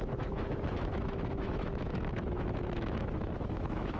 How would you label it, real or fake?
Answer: fake